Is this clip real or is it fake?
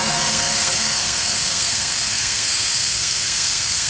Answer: fake